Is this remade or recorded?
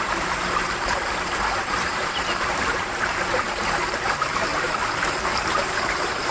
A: remade